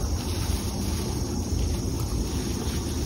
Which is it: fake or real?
real